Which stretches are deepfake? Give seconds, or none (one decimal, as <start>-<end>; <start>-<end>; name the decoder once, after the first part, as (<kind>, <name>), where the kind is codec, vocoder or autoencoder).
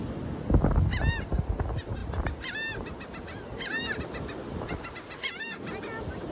none